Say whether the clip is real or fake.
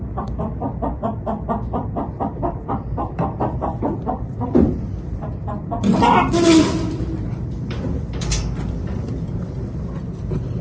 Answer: fake